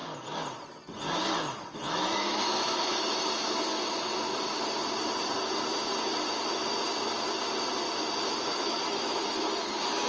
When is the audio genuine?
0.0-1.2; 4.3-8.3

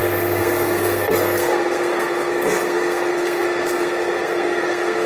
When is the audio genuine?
none

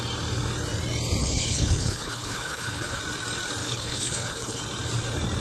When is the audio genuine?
0.0-1.2; 3.0-3.6; 4.6-5.4